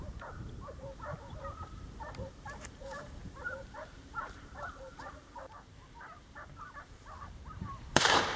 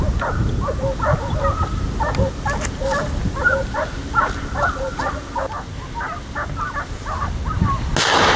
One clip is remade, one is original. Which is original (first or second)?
second